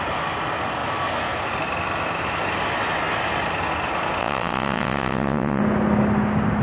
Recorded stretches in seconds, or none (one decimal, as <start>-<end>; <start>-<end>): 0.0-4.2; 5.6-6.6